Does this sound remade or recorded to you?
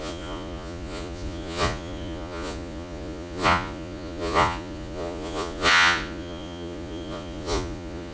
remade